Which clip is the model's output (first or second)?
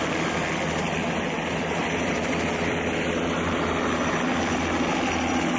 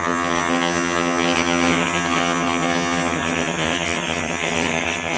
second